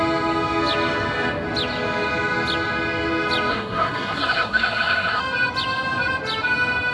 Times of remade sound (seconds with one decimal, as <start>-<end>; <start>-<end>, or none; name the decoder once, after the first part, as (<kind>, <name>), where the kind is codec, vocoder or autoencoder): 3.5-5.2 (codec, SNAC)

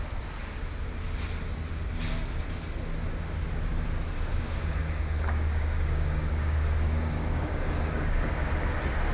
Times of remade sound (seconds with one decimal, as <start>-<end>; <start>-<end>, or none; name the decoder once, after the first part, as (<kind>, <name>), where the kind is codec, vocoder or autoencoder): 4.3-8.5 (codec, DAC)

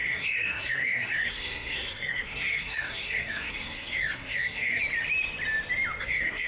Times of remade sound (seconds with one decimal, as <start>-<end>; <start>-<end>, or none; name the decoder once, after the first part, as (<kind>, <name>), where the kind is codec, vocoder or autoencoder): 0.0-4.8 (codec, SNAC); 6.0-6.5

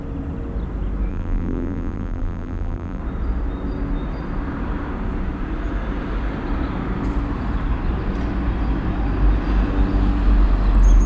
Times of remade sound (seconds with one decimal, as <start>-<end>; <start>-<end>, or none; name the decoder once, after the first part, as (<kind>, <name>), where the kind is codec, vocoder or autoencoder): 1.1-3.0 (vocoder, BigVGAN v2)

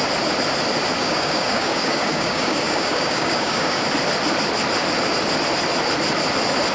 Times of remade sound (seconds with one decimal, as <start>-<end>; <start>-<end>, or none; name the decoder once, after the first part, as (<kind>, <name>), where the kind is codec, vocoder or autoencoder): 1.0-3.8 (codec, DAC)